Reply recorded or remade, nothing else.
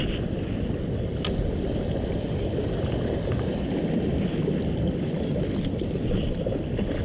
recorded